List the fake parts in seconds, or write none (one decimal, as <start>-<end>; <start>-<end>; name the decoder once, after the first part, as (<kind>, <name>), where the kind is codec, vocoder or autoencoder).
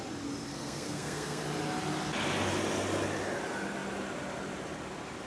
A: 0.5-1.4 (codec, SNAC)